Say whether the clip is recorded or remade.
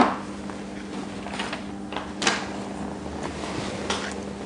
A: recorded